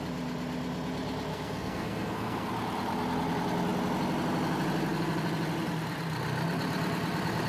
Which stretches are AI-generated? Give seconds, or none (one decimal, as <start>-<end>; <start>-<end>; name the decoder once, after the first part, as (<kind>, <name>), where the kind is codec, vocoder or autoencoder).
1.3-2.5 (codec, SNAC)